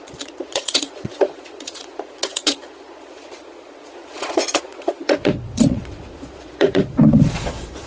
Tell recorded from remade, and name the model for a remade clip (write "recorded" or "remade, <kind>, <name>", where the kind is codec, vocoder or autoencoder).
remade, vocoder, Vocos